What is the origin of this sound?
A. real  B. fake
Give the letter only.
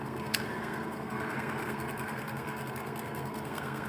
B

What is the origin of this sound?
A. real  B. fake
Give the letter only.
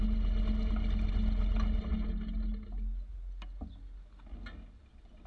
A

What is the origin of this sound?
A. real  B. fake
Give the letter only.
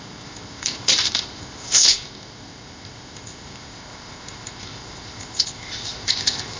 B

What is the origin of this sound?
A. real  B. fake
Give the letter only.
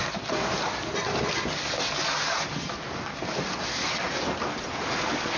A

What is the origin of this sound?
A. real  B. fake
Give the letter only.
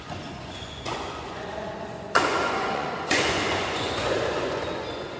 B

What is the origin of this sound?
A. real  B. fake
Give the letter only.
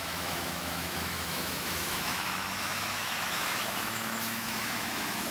B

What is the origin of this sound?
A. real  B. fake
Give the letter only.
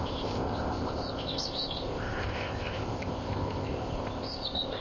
B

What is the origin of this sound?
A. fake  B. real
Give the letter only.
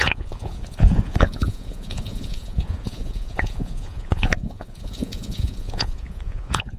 A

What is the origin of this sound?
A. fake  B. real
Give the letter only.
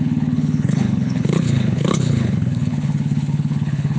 A